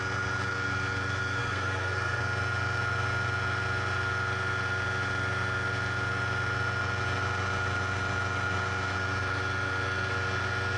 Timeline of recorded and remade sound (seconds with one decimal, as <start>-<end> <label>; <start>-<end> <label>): 0.0-1.4 recorded; 1.4-2.2 remade; 2.2-10.8 recorded